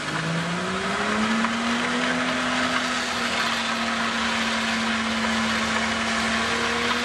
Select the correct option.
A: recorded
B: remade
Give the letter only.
A